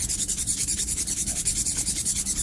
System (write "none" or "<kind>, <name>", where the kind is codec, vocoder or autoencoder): codec, HILCodec